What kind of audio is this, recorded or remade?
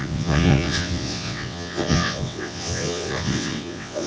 remade